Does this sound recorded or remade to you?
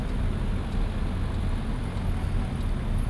recorded